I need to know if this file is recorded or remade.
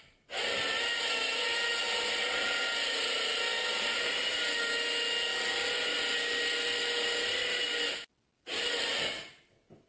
recorded